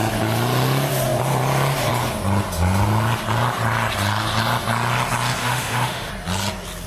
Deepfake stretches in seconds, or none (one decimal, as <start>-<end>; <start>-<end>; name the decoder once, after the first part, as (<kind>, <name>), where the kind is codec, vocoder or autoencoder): 5.4-6.1 (autoencoder, DAC-VAE)